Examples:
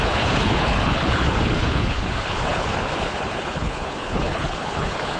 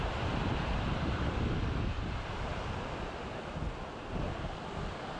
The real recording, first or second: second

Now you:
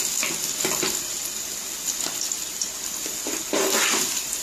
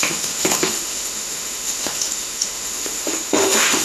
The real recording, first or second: first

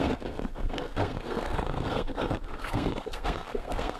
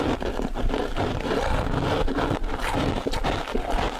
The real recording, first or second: second